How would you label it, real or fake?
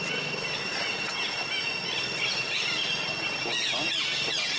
real